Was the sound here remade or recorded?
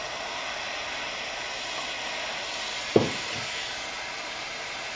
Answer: recorded